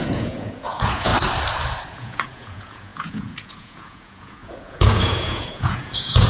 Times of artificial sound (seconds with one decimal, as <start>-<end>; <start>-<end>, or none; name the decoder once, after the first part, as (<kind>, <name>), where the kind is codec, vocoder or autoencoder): 0.0-1.1 (vocoder, Vocos); 1.9-6.3